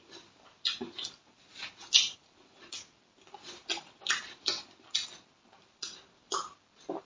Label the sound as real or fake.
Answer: real